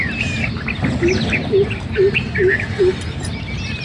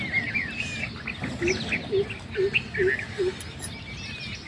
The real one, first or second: second